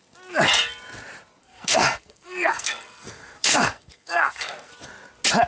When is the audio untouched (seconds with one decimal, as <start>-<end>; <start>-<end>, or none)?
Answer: 0.0-1.4; 4.7-5.5